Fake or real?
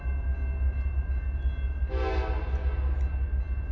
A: real